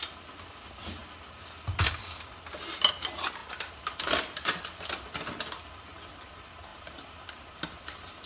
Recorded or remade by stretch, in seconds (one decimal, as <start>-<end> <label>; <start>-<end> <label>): 0.0-1.0 recorded; 1.0-1.9 remade; 1.9-3.4 recorded; 3.4-4.8 remade; 4.8-6.7 recorded; 6.7-7.3 remade; 7.3-8.3 recorded